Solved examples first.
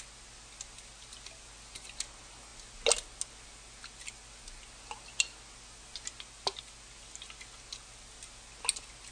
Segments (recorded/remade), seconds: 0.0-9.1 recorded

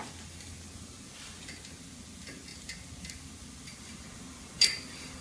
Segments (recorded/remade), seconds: 0.0-5.2 recorded

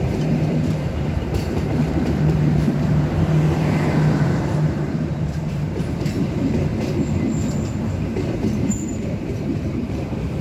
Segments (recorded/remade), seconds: 0.0-6.7 remade; 6.7-7.7 recorded; 7.7-10.4 remade